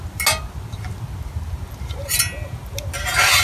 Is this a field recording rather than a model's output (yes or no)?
yes